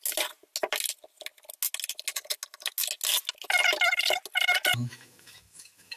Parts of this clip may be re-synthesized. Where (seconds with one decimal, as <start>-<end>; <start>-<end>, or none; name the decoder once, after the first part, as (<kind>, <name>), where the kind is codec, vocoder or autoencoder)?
4.7-6.0 (autoencoder, DAC-VAE)